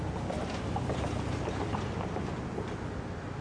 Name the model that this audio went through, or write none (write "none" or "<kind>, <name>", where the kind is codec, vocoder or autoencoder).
none